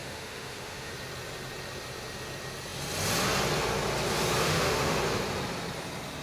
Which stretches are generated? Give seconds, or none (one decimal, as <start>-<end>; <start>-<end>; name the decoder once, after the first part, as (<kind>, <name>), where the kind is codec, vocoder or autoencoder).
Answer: 0.0-0.9 (autoencoder, DAC-VAE); 4.4-5.0